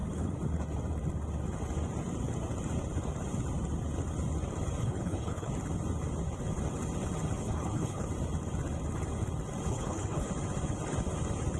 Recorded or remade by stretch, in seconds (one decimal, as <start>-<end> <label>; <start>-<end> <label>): 0.0-4.8 recorded; 4.8-5.5 remade; 5.5-7.4 recorded; 7.4-8.1 remade; 8.1-9.7 recorded; 9.7-10.3 remade; 10.3-11.6 recorded